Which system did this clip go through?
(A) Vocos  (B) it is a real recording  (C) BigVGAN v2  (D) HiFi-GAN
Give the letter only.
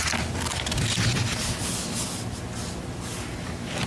B